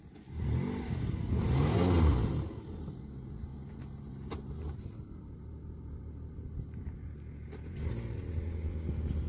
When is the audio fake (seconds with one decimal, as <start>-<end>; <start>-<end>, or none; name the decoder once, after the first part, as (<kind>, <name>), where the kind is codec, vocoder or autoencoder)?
none